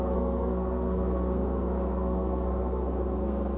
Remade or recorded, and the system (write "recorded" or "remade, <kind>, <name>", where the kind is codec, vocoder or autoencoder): remade, codec, SNAC